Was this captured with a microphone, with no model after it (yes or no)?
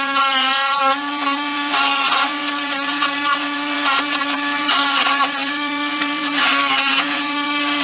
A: no